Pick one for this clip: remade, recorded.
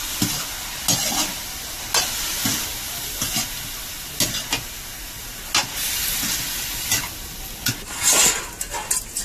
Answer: recorded